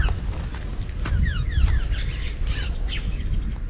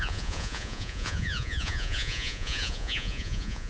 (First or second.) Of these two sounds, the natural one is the first